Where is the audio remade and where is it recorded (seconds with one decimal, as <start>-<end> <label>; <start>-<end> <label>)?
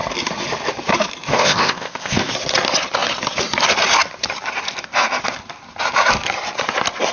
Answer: 0.0-1.3 recorded; 1.3-2.3 remade; 2.3-7.1 recorded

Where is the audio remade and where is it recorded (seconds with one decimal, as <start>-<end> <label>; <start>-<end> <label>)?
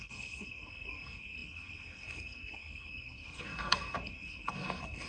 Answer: 0.0-5.1 remade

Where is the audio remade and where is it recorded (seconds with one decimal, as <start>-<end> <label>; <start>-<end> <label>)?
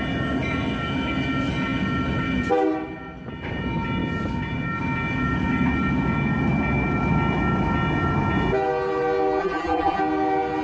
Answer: 0.0-9.4 recorded; 9.4-10.0 remade; 10.0-10.6 recorded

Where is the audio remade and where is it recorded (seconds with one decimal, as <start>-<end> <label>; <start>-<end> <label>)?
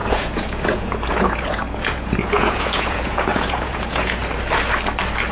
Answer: 0.0-4.2 remade; 4.2-5.3 recorded